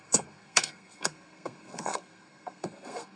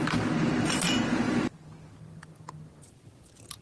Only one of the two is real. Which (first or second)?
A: second